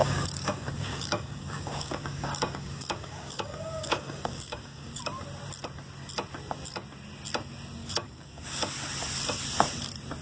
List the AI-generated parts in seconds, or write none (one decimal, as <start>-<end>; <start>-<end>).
0.0-5.0; 7.8-8.7